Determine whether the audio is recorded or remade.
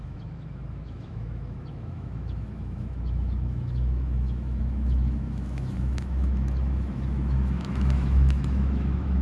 remade